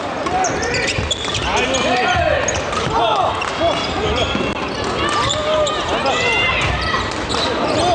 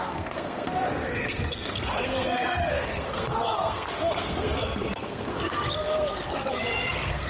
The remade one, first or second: second